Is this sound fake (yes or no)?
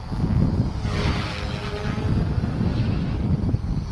no